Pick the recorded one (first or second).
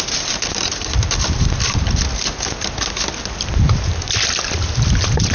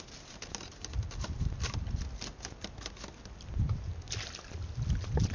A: second